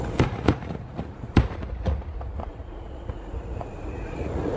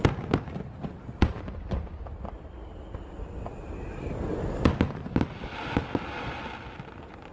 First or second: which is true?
second